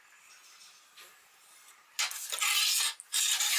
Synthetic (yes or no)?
no